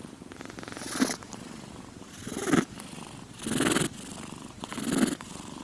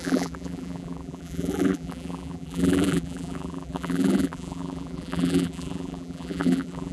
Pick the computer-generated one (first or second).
second